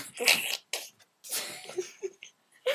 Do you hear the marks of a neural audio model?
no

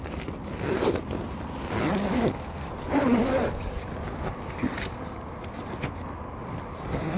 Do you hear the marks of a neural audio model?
no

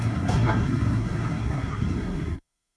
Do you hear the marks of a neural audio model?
yes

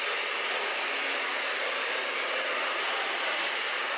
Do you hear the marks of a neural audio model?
no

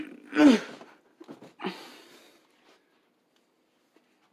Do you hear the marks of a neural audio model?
no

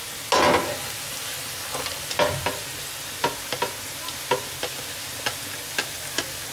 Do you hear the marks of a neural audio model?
no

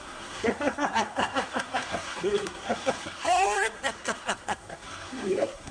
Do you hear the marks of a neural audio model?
yes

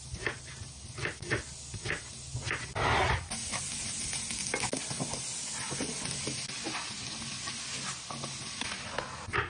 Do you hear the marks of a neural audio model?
no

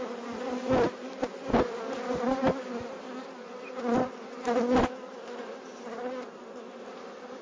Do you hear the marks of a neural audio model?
no